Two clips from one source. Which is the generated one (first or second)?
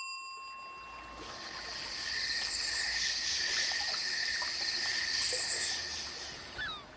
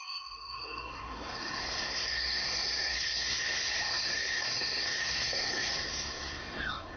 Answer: second